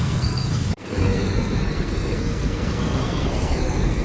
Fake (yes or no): yes